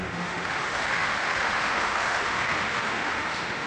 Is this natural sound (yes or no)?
no